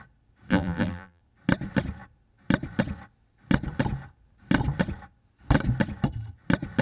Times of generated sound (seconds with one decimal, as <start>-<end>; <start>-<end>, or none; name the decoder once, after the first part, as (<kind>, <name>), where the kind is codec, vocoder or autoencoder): 0.5-1.2 (vocoder, BigVGAN v2)